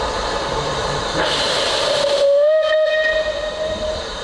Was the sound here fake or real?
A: fake